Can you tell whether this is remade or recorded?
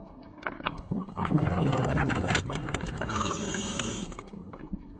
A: remade